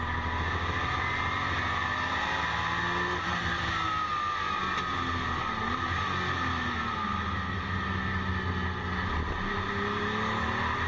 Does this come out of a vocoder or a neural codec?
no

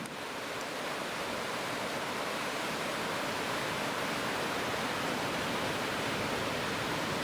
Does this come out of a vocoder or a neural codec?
yes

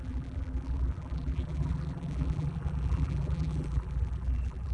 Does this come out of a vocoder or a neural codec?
yes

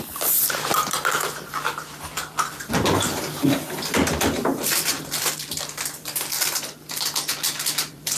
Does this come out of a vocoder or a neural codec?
yes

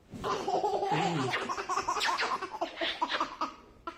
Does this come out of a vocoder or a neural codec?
no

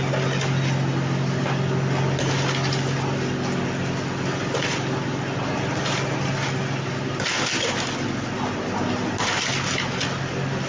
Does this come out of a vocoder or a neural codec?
no